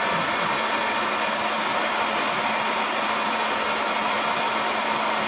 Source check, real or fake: real